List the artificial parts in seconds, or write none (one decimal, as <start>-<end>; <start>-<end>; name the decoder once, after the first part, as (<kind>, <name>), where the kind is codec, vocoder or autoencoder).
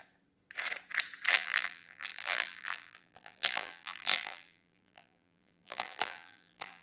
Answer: 1.3-6.8 (vocoder, BigVGAN v2)